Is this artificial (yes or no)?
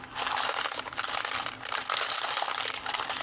no